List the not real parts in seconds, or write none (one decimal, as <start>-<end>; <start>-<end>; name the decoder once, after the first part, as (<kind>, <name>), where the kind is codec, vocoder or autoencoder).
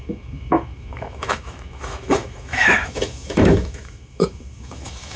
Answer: 0.0-5.2 (autoencoder, DAC-VAE)